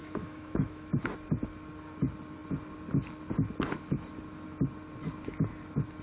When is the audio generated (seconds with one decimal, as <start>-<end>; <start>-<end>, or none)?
0.0-1.0